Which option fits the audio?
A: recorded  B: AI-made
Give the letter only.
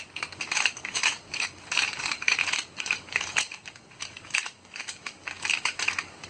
B